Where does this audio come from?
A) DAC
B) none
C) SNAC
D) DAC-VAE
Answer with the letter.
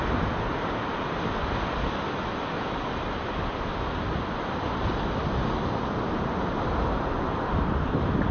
B